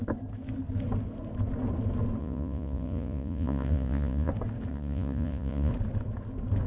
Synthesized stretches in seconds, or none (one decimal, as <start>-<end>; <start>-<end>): 2.2-4.3; 4.7-5.7